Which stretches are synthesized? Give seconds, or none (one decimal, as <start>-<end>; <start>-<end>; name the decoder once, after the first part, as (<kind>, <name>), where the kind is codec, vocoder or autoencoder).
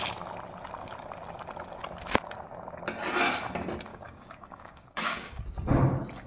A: 3.9-5.4 (codec, DAC)